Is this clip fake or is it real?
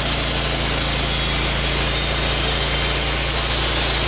real